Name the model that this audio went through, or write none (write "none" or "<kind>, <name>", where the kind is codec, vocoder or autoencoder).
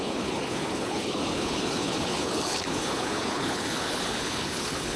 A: codec, HILCodec